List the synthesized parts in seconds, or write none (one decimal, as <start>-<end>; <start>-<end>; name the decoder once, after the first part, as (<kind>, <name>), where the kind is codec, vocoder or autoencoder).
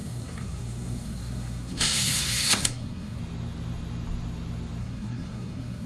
0.0-3.2 (codec, SNAC); 4.8-5.9